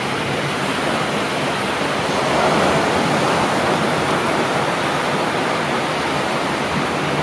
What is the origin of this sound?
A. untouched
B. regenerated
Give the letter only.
A